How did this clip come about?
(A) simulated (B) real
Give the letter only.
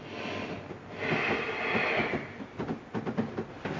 B